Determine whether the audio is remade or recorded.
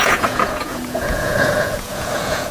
remade